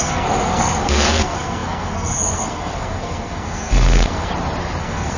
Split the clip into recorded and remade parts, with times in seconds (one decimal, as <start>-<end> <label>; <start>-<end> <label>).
0.0-4.3 remade; 4.3-4.8 recorded; 4.8-5.2 remade